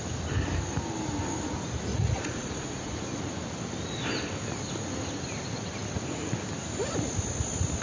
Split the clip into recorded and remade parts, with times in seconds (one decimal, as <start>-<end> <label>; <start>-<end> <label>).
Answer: 0.0-1.9 recorded; 1.9-2.9 remade; 2.9-7.8 recorded